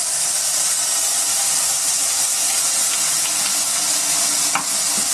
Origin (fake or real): real